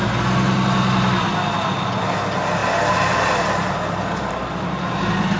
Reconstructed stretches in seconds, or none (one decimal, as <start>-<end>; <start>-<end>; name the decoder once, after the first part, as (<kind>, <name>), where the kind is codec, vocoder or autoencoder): none